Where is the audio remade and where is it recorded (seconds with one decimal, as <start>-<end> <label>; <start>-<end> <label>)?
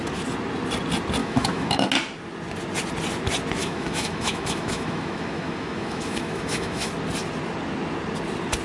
0.0-1.2 recorded; 1.2-1.9 remade; 1.9-3.6 recorded; 3.6-6.9 remade; 6.9-8.6 recorded